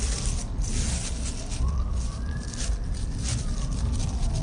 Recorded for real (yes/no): yes